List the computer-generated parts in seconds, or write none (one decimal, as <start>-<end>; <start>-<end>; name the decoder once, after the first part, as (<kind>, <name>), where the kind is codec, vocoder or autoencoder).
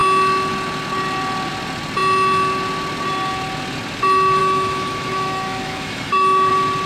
4.4-6.5 (autoencoder, DAC-VAE)